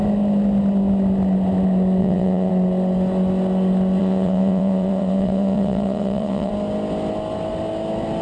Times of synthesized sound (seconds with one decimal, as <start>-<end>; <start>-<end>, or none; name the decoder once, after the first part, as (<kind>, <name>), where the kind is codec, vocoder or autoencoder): 2.0-2.5 (vocoder, WaveNeXt); 4.0-6.5